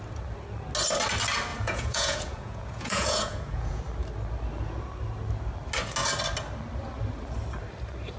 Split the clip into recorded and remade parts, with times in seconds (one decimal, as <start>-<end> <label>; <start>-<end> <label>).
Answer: 0.0-1.5 recorded; 1.5-3.8 remade; 3.8-8.2 recorded